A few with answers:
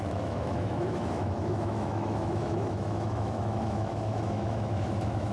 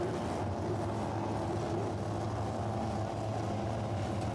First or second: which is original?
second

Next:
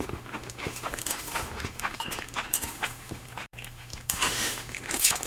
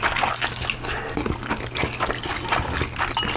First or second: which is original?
second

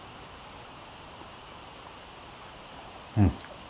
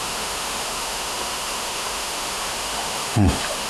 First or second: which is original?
first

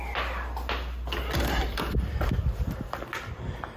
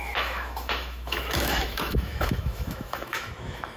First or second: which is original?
first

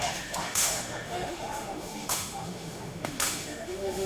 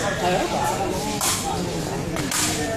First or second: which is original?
second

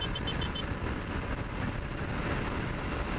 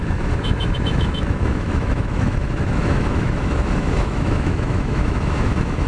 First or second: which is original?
first